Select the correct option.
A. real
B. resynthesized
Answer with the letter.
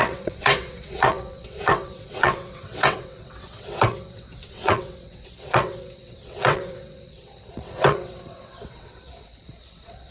B